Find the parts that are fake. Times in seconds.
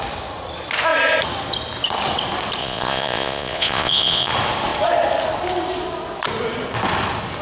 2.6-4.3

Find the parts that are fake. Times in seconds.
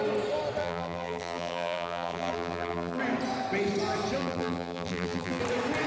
0.6-3.0; 4.2-5.4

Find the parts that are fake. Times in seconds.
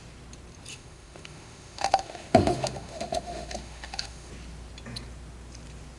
0.7-4.3